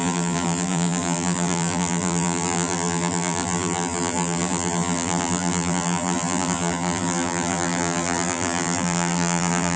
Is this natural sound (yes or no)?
no